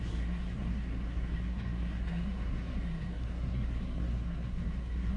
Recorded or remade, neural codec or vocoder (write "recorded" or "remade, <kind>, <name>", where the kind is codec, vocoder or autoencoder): remade, codec, SNAC